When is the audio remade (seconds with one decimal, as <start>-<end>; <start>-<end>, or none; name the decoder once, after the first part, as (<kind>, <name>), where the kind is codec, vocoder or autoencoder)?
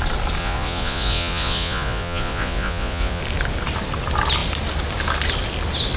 0.4-3.2 (vocoder, Vocos)